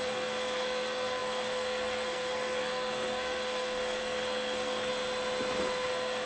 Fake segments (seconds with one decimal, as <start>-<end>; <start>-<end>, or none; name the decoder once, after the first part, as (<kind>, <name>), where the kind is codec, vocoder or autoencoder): 0.0-4.9 (codec, SNAC); 5.6-6.3